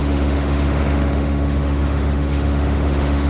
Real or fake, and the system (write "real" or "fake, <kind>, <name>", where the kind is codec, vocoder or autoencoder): fake, autoencoder, DAC-VAE